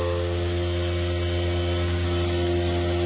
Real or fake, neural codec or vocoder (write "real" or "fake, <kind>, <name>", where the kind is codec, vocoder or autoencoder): real